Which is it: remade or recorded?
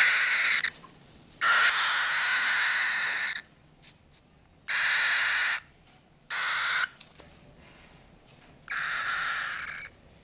remade